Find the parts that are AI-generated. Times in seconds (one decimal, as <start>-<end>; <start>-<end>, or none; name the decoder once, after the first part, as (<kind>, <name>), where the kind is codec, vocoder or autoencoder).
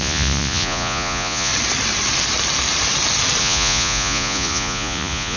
0.0-1.5 (vocoder, Vocos); 3.4-5.4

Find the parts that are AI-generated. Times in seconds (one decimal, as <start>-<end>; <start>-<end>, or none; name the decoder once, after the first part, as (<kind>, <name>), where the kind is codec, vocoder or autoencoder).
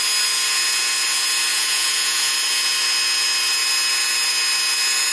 1.5-2.3 (vocoder, Vocos)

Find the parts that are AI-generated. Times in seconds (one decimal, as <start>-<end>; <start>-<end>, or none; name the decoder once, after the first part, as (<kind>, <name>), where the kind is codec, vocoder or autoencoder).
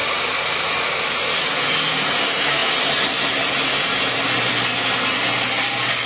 none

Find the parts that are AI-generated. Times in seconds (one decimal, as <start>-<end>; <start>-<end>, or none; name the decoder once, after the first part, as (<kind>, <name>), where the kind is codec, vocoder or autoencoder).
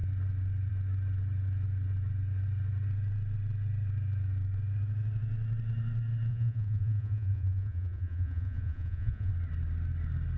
6.3-9.3 (vocoder, Vocos)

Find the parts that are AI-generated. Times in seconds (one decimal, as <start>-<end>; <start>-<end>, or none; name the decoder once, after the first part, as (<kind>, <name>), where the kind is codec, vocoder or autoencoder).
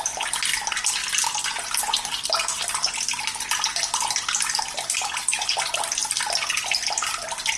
none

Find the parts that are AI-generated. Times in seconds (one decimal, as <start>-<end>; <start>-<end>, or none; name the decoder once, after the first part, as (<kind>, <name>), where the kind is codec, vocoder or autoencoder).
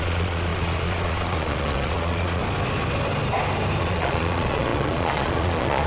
0.0-2.4 (vocoder, Vocos); 3.8-5.9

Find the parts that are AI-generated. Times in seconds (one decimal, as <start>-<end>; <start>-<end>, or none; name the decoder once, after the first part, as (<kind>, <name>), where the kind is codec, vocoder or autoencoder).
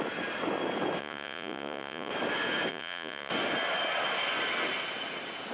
1.0-2.1 (vocoder, Vocos); 2.7-3.3